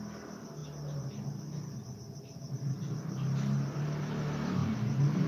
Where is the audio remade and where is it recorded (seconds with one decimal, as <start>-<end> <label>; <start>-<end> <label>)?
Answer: 0.0-5.3 recorded